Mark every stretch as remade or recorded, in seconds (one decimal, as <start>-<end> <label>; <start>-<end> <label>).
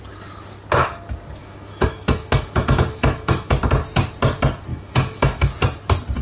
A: 0.0-1.4 recorded; 1.4-3.5 remade; 3.5-4.7 recorded; 4.7-5.5 remade; 5.5-6.2 recorded